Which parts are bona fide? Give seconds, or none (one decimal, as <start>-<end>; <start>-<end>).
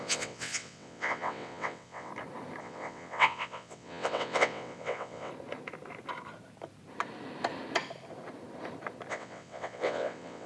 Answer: 2.1-2.6; 5.3-9.1